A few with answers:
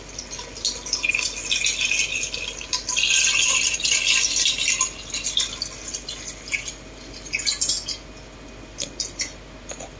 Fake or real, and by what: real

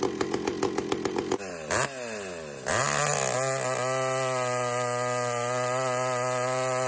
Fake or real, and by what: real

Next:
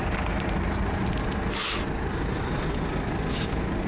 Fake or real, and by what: real